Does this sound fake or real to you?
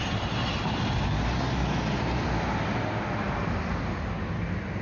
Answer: real